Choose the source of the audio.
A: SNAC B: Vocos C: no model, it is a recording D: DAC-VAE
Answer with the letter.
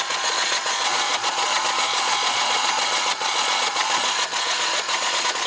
B